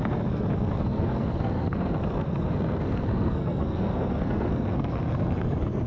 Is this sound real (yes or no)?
no